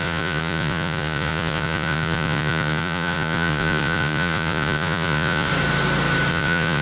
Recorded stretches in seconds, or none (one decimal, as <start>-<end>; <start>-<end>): 5.5-6.3